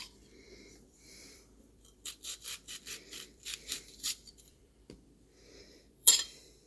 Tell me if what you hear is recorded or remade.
remade